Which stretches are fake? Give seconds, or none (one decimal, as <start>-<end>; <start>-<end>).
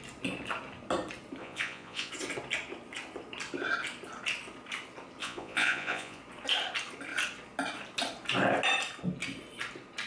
1.4-2.1; 5.2-6.2